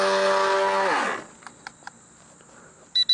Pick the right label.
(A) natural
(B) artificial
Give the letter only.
A